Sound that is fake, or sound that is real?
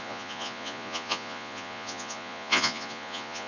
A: fake